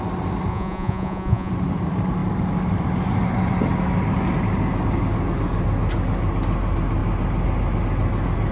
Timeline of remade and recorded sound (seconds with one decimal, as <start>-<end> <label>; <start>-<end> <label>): 0.0-0.5 recorded; 0.5-1.5 remade; 1.5-8.5 recorded